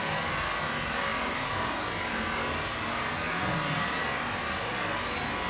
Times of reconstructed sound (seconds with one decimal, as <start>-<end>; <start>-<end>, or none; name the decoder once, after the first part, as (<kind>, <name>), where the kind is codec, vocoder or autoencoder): none

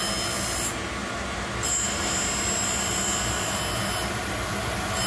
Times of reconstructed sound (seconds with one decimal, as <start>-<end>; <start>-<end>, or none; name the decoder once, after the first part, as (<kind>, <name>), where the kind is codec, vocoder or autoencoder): none